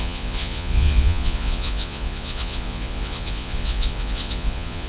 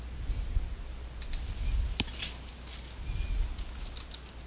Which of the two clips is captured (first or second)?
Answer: second